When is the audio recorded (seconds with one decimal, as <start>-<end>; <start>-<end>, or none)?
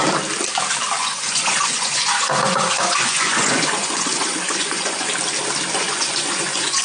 0.0-1.0; 5.1-5.7